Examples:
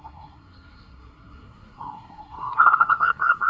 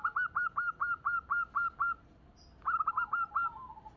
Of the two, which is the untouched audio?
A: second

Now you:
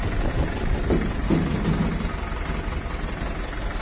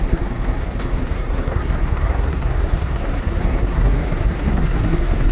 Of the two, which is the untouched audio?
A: first